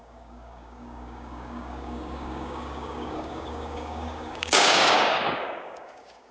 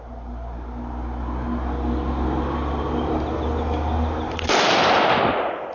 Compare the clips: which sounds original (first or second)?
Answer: second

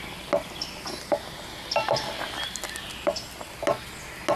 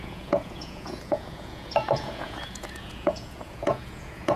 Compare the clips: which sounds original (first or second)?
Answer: first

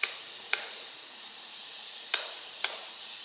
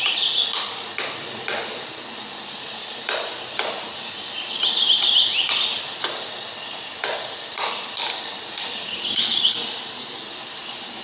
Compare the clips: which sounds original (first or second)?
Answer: second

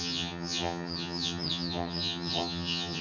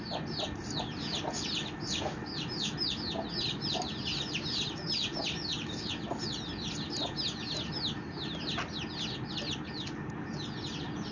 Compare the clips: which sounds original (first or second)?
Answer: second